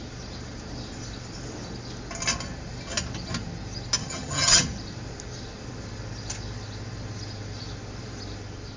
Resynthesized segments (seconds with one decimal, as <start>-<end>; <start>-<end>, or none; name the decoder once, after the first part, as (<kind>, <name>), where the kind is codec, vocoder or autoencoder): 4.0-4.6 (vocoder, HiFi-GAN)